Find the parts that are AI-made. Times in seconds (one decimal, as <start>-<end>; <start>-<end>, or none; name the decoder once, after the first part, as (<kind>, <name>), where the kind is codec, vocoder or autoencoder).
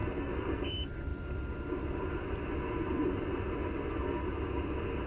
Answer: 0.0-0.6 (codec, SNAC)